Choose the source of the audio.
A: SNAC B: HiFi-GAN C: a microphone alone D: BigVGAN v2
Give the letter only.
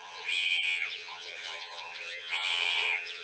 B